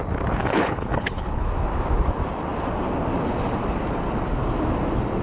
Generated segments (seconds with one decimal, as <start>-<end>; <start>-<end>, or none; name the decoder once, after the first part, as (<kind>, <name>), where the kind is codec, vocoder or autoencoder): 0.4-1.5 (codec, HILCodec)